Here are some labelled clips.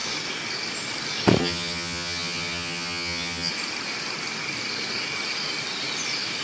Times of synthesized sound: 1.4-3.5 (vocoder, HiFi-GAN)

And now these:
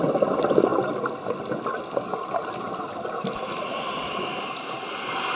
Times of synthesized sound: none

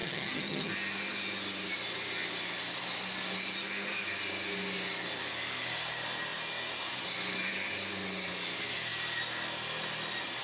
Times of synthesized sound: 0.0-0.7 (vocoder, HiFi-GAN)

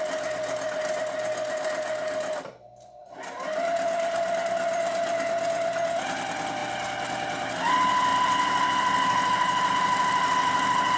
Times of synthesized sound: none